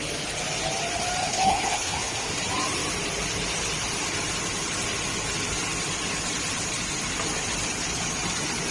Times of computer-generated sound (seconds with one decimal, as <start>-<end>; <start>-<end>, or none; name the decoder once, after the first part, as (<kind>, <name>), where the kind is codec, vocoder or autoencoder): 1.2-2.4 (codec, HILCodec)